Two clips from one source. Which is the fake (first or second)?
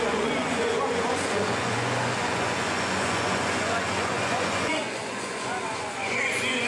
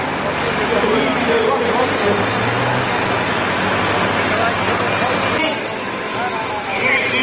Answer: first